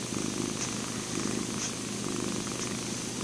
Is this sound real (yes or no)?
yes